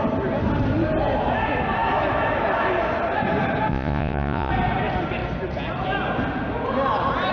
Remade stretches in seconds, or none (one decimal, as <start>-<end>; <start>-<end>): 3.7-4.5